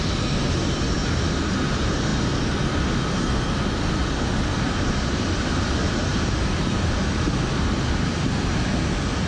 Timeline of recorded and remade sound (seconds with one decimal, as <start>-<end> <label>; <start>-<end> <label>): 0.0-4.5 recorded; 4.5-8.2 remade; 8.2-9.3 recorded